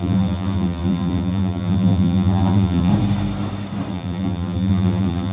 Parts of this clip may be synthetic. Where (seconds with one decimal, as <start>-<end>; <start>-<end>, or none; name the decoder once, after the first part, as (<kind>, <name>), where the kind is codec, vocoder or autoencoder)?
0.0-2.9 (vocoder, BigVGAN v2); 3.9-5.3